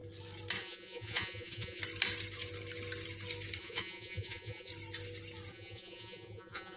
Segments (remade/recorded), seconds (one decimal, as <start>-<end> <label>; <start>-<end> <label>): 0.0-0.6 recorded; 0.6-1.8 remade; 1.8-3.6 recorded; 3.6-4.7 remade; 4.7-5.5 recorded; 5.5-6.8 remade